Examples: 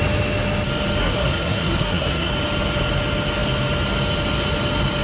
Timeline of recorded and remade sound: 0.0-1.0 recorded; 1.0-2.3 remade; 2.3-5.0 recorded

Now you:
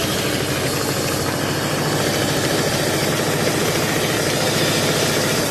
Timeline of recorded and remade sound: 0.0-2.2 recorded; 2.2-5.5 remade

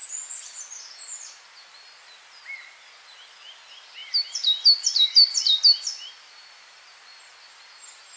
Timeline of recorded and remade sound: 0.0-0.6 remade; 0.6-8.2 recorded